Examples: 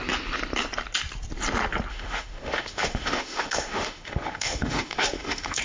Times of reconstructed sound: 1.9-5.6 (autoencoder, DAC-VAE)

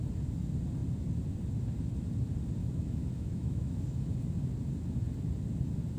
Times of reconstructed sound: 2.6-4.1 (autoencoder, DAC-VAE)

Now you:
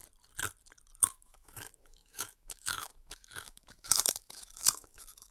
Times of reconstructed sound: 1.0-5.3 (autoencoder, DAC-VAE)